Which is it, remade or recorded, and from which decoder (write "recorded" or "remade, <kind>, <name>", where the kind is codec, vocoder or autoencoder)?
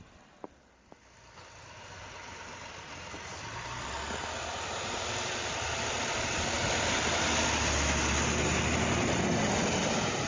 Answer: recorded